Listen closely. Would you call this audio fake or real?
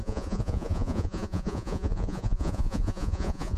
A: fake